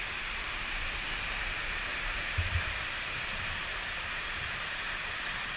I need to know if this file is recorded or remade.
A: remade